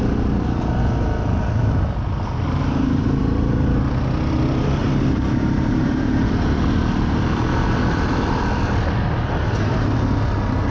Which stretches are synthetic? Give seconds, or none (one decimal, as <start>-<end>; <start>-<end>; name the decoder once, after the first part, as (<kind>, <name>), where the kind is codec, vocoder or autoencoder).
4.8-6.3 (vocoder, BigVGAN v2)